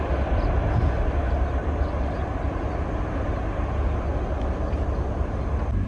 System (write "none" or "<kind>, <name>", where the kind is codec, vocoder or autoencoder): none